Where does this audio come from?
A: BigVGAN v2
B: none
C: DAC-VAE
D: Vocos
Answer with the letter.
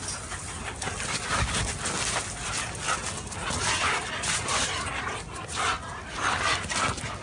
B